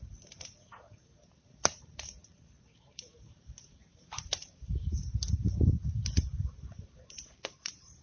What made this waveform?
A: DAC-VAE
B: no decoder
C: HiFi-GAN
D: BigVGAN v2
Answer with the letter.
D